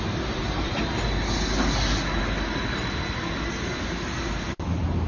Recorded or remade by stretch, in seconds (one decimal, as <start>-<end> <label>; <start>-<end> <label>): 0.0-5.1 recorded